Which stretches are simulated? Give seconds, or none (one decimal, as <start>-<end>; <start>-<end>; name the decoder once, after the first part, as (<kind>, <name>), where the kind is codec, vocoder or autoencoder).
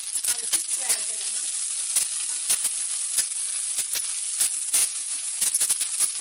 4.8-5.7 (vocoder, Vocos)